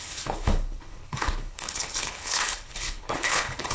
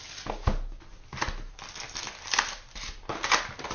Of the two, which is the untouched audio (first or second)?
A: second